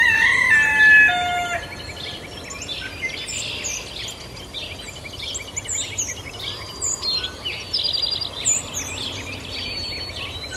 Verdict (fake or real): real